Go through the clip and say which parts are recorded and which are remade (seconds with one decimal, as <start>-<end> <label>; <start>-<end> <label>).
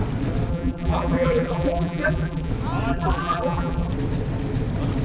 0.0-0.5 recorded; 0.5-2.5 remade; 2.5-2.9 recorded; 2.9-3.9 remade; 3.9-5.0 recorded